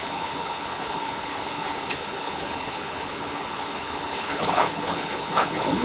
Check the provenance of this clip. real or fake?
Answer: fake